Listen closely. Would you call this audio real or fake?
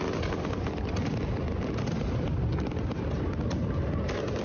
real